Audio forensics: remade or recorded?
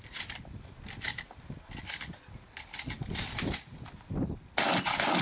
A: recorded